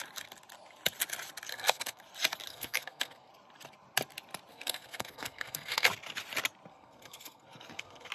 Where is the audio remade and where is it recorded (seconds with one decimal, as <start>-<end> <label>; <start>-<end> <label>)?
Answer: 0.0-1.5 recorded; 1.5-2.0 remade; 2.0-2.5 recorded; 2.5-3.3 remade; 3.3-4.5 recorded; 4.5-5.9 remade; 5.9-6.7 recorded; 6.7-8.1 remade